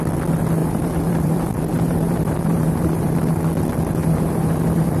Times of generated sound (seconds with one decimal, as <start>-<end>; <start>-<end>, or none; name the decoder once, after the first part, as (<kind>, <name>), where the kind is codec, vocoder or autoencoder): 0.6-3.4 (vocoder, BigVGAN v2); 4.0-5.0